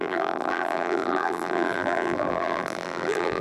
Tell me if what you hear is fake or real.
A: fake